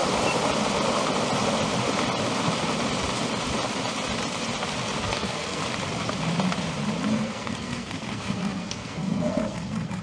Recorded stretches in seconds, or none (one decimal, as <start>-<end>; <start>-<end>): 0.0-5.0; 5.6-7.1